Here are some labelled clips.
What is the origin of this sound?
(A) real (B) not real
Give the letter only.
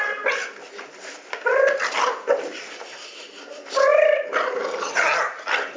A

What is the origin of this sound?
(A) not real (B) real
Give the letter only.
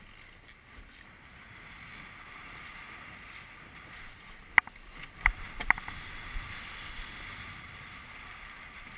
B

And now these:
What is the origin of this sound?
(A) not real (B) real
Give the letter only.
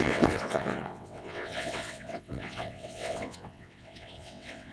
A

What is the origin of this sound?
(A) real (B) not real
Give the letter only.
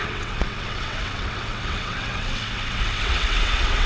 B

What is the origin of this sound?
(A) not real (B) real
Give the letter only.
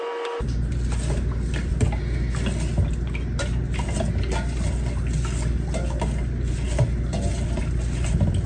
B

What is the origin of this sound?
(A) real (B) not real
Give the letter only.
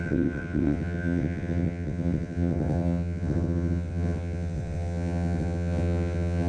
B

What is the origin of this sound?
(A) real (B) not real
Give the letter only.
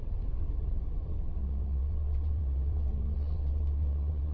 B